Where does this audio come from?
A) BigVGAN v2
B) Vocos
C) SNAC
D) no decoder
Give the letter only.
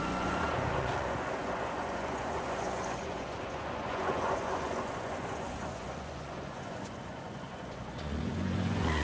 B